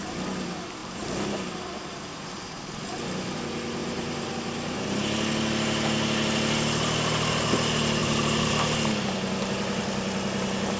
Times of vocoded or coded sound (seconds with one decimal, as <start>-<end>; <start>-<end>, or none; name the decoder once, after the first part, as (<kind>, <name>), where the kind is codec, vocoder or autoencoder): 3.8-4.3 (vocoder, BigVGAN v2); 8.0-8.5